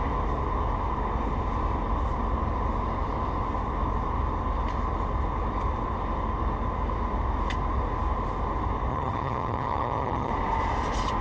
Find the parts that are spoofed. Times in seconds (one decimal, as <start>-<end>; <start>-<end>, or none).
8.9-10.3